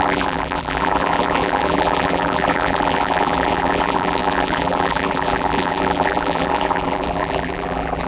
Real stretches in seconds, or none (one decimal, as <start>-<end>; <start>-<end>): none